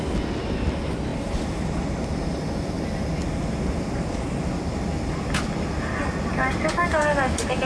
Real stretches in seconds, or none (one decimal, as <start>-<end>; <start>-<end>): 0.0-7.7